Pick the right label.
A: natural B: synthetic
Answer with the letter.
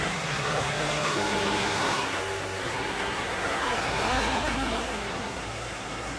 B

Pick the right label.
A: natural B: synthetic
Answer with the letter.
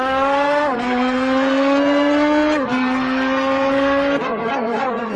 B